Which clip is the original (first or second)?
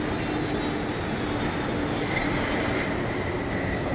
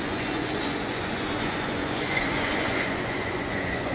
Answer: first